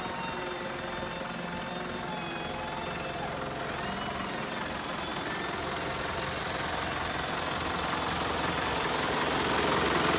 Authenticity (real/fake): real